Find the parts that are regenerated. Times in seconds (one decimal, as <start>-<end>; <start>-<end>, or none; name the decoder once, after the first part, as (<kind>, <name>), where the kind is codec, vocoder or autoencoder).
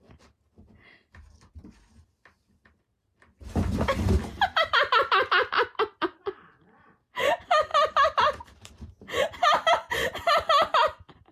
7.7-8.7 (vocoder, BigVGAN v2)